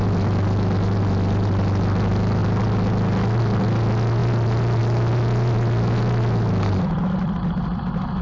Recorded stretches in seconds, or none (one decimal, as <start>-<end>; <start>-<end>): 0.0-8.2